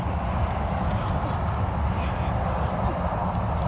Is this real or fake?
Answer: real